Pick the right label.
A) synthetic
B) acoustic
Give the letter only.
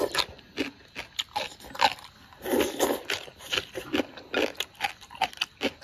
B